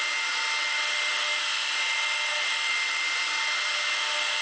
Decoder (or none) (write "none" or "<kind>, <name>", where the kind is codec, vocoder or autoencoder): none